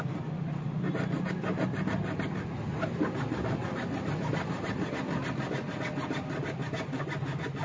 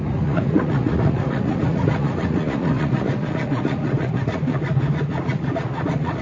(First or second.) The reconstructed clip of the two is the second